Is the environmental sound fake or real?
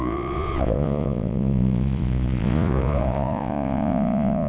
fake